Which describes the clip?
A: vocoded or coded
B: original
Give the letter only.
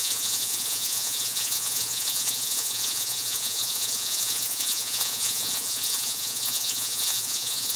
A